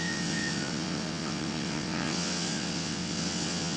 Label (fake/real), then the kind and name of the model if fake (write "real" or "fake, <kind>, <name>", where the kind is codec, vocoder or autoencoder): fake, vocoder, WaveNeXt